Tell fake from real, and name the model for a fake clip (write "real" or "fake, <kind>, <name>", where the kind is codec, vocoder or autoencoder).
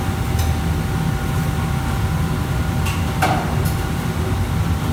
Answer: real